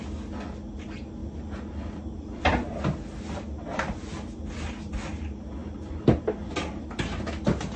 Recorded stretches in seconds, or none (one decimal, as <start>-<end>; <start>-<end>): 0.0-7.8

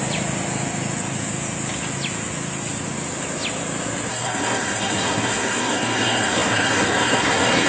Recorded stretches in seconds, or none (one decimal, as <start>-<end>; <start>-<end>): 0.0-4.1

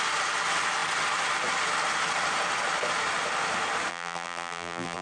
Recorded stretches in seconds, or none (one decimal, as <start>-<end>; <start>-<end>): 0.0-3.9

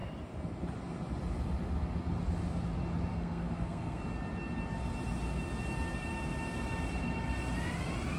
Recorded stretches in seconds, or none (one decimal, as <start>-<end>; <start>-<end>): 0.0-3.1; 4.0-8.2

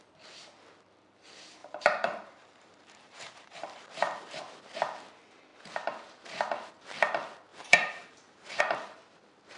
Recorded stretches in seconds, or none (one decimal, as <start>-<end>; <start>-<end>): 0.0-1.6; 4.4-7.5; 8.6-9.6

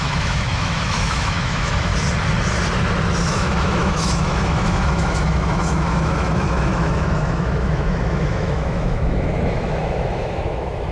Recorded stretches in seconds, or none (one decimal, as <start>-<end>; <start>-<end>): 1.9-3.2

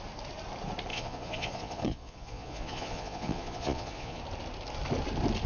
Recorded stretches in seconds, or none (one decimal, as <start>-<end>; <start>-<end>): 0.0-0.9; 4.2-5.5